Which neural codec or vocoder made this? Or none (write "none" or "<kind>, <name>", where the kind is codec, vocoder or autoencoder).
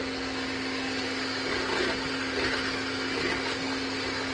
none